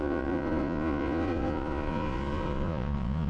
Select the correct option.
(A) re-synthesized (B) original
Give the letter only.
A